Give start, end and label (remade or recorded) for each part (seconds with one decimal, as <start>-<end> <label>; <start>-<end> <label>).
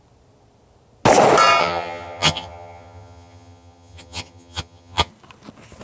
0.0-1.6 recorded; 1.6-5.1 remade; 5.1-5.8 recorded